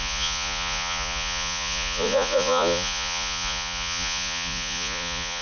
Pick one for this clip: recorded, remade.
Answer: remade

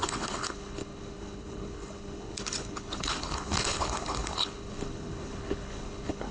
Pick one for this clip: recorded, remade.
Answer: remade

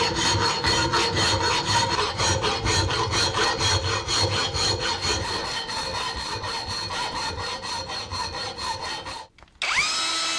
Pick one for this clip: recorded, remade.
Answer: recorded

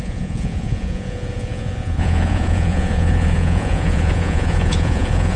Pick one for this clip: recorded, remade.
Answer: remade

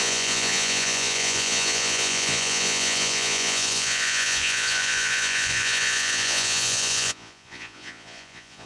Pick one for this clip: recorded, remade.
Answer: remade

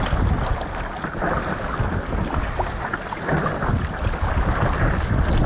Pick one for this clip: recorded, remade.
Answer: recorded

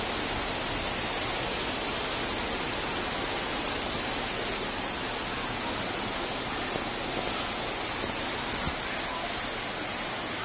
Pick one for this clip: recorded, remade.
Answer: recorded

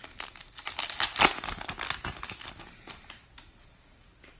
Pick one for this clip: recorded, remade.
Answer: recorded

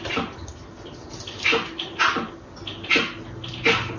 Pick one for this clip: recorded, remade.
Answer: recorded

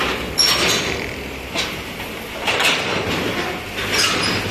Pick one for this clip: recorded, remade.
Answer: recorded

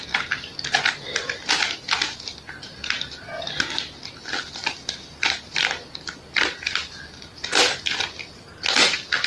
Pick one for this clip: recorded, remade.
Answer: recorded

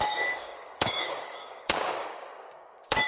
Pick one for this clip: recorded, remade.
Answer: remade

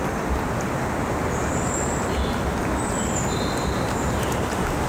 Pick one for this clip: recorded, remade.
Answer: recorded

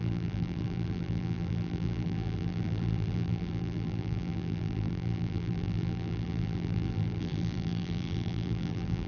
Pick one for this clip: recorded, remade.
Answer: remade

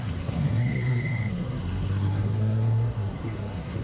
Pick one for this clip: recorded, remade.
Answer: remade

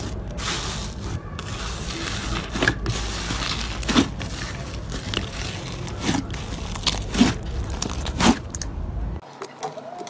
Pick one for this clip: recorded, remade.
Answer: recorded